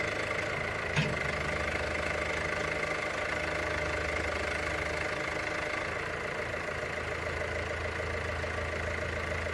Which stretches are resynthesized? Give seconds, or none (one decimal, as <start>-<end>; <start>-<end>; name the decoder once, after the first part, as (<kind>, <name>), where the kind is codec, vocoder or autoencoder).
none